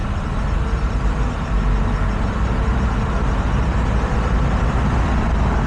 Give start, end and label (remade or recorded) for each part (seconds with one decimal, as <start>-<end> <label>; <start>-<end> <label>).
0.0-5.7 recorded